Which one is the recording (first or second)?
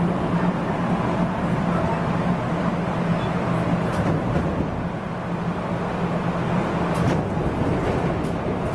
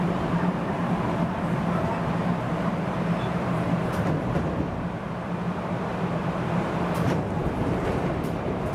first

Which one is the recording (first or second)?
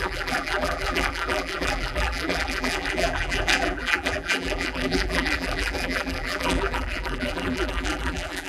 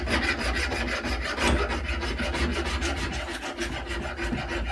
second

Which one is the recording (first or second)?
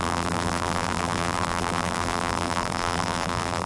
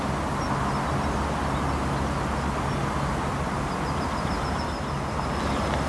second